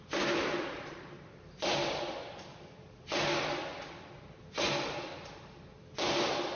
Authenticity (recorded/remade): recorded